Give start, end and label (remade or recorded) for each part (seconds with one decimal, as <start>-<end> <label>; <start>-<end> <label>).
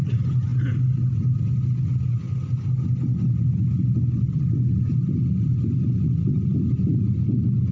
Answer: 0.0-7.7 recorded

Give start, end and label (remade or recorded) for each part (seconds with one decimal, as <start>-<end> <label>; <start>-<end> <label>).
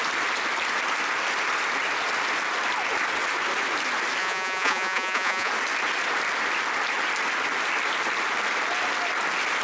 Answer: 0.0-4.2 recorded; 4.2-5.5 remade; 5.5-9.6 recorded